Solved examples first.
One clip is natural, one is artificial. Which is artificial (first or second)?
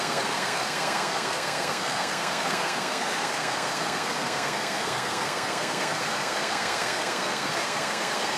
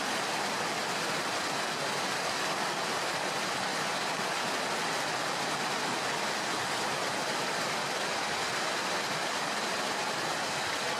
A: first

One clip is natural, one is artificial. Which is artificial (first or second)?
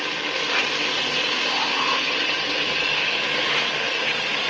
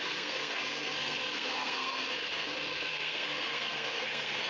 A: second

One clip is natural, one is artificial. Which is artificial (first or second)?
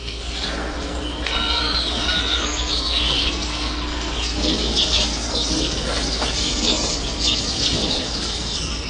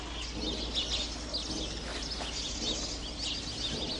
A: first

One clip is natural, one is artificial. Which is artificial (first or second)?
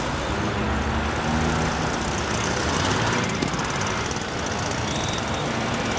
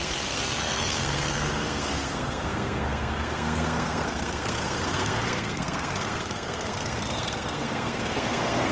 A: second